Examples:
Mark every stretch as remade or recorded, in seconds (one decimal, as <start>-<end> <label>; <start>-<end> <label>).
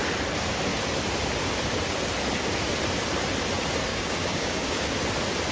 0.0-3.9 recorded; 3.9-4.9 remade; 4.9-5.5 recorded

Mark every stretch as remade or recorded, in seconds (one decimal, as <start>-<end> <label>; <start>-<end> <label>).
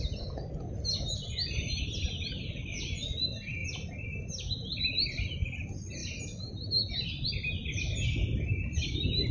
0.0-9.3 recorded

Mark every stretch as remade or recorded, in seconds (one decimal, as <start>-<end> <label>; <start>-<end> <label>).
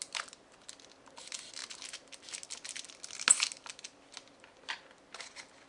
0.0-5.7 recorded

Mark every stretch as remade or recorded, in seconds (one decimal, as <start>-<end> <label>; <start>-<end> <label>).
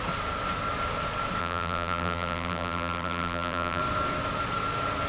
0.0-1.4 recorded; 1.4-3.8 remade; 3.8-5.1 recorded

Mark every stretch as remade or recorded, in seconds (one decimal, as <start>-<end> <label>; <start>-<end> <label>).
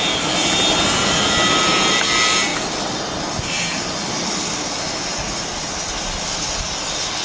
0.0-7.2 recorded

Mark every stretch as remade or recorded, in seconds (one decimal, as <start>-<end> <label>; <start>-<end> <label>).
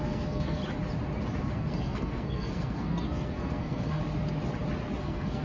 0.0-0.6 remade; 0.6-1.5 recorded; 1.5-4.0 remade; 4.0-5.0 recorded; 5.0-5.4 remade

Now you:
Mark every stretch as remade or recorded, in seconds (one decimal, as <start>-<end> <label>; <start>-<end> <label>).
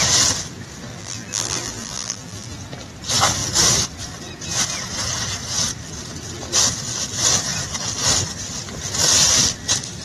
0.0-0.9 recorded; 0.9-2.5 remade; 2.5-10.0 recorded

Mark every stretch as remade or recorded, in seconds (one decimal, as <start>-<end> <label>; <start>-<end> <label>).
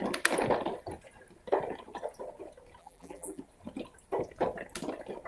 0.0-2.8 recorded; 2.8-3.4 remade; 3.4-5.3 recorded